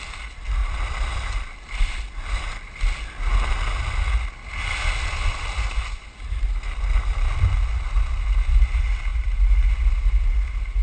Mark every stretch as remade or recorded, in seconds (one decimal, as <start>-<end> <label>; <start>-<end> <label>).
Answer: 0.0-0.6 recorded; 0.6-2.4 remade; 2.4-9.1 recorded; 9.1-9.7 remade; 9.7-10.8 recorded